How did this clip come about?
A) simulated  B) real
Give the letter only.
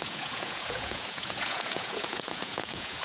A